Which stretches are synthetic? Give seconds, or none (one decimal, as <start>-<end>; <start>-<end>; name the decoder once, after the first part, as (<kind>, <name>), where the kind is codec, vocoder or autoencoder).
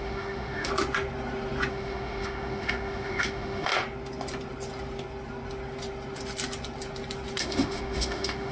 0.0-0.7 (autoencoder, DAC-VAE); 1.7-3.7; 7.4-8.5